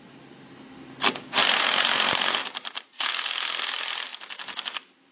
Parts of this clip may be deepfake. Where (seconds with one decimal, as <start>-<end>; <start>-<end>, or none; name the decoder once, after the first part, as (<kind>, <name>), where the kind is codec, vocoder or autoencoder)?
1.4-3.1 (vocoder, BigVGAN v2)